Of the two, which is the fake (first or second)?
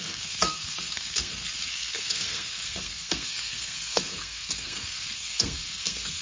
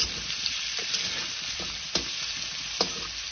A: first